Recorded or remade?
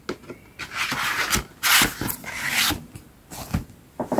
recorded